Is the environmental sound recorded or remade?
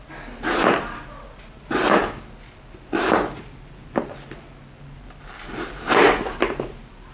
recorded